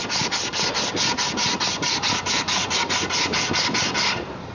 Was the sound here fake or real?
real